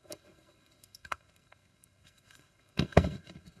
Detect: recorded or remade remade